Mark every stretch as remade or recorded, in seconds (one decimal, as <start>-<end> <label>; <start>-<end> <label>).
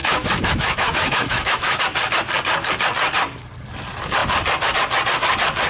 0.0-1.8 remade; 1.8-5.7 recorded